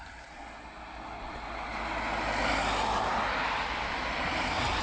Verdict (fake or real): real